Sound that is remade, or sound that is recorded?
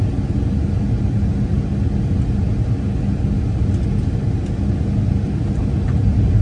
recorded